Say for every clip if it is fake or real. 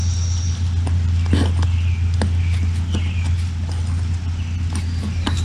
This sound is real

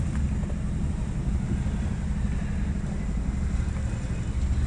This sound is fake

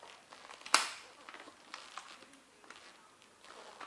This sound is real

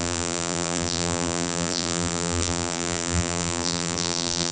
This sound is fake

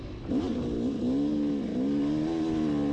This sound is real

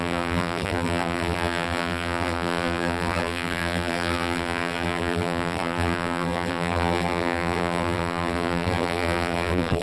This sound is fake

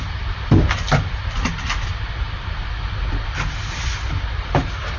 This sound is real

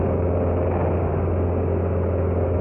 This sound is real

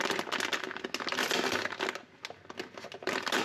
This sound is real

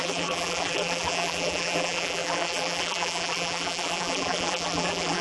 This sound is fake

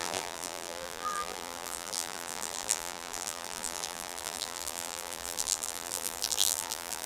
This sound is fake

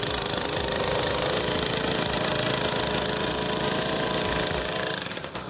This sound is fake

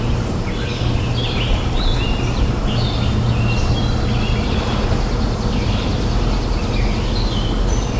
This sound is real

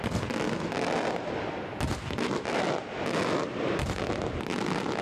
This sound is real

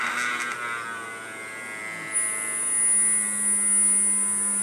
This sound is real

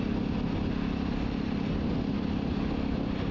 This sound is real